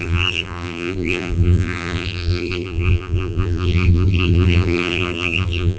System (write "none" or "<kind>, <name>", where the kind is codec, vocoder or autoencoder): vocoder, BigVGAN v2